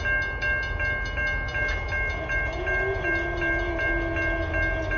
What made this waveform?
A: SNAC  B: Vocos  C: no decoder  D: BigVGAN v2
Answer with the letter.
C